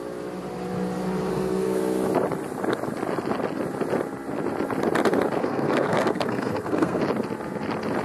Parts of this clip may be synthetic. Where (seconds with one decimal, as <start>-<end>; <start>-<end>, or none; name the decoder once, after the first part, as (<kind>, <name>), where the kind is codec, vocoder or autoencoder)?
1.3-1.8 (codec, SNAC); 5.4-7.0